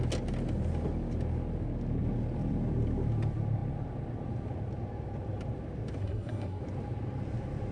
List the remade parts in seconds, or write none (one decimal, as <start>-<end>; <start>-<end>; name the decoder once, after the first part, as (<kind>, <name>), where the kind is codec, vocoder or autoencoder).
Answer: 6.0-6.6 (codec, SNAC)